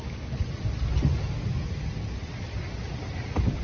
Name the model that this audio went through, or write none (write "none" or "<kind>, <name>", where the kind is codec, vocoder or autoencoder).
none